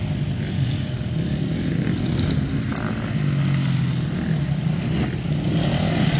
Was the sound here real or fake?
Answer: real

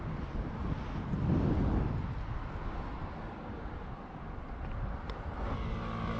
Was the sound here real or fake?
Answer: real